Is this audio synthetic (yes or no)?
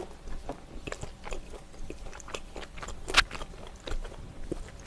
no